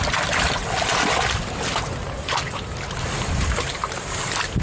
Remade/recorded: recorded